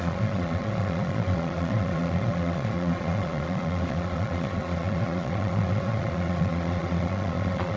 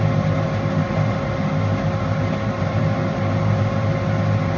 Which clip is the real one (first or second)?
second